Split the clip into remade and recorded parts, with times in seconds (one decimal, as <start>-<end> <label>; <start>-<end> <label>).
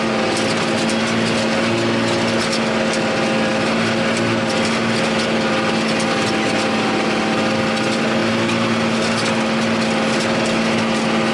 0.0-11.3 recorded